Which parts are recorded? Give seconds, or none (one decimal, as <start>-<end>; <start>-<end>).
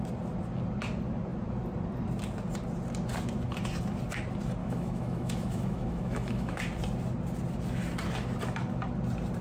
0.0-4.6; 6.6-9.4